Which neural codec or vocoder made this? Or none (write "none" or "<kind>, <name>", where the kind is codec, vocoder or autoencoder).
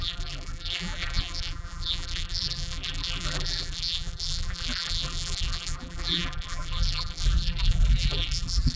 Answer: vocoder, BigVGAN v2